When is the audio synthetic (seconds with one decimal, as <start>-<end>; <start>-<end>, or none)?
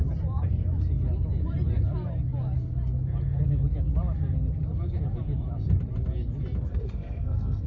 6.7-7.7